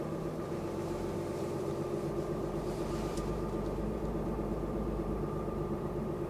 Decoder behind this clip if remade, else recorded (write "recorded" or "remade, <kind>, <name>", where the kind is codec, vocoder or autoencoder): remade, vocoder, BigVGAN v2